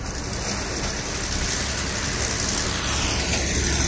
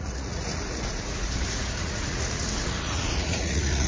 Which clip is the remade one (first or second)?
second